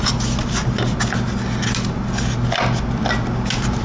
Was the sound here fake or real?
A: real